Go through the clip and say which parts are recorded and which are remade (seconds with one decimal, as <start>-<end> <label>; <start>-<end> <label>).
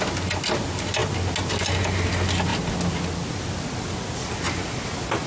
0.0-5.3 recorded